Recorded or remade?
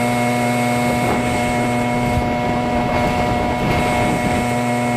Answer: recorded